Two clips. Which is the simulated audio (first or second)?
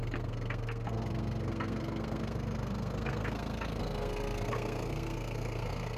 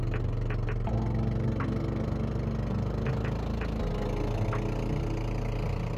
first